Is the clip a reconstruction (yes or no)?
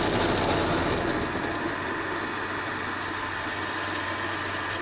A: no